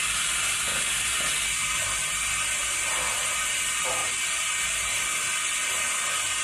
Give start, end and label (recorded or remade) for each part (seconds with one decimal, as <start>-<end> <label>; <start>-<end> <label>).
0.0-4.0 recorded; 4.0-4.9 remade; 4.9-6.4 recorded